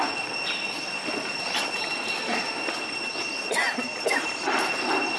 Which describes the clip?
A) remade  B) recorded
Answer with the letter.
B